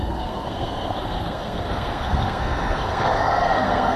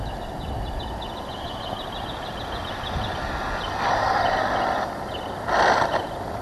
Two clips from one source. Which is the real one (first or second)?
second